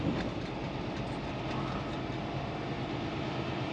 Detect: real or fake real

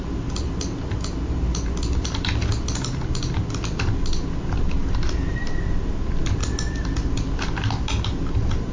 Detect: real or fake real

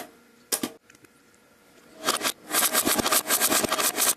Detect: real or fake real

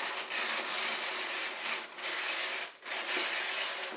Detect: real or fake real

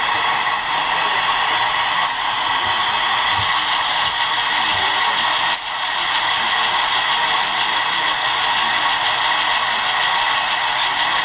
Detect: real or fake real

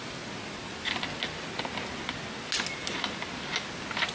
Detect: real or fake real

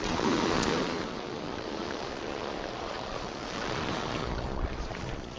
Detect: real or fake fake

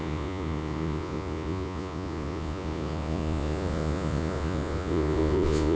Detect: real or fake fake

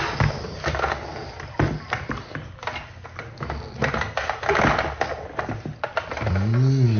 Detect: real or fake real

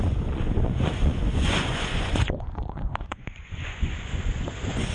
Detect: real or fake fake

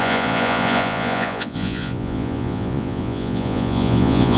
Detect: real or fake fake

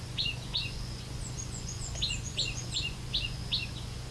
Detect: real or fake fake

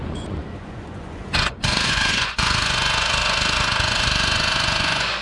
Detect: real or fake fake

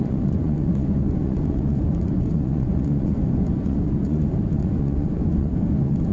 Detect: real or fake fake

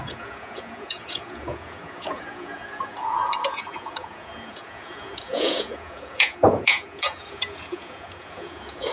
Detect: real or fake fake